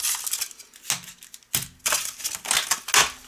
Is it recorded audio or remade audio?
recorded